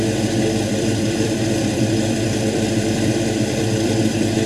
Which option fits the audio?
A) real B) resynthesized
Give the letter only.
B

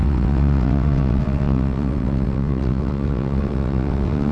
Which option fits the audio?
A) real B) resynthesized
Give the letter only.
B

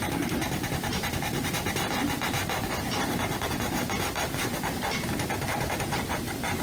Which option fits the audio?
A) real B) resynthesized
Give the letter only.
A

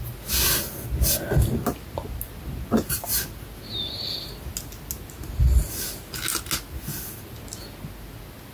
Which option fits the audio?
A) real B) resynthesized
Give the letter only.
A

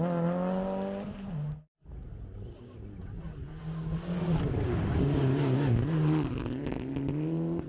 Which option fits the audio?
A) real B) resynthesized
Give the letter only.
A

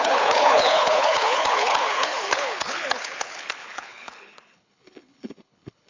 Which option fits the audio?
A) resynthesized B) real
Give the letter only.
A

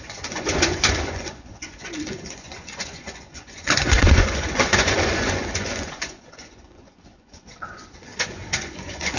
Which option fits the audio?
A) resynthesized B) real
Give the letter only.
A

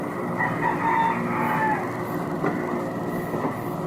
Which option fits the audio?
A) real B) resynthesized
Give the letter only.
B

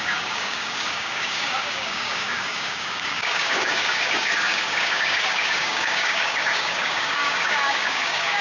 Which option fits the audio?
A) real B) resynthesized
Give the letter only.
B